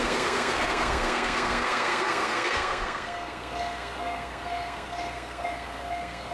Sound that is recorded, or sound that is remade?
remade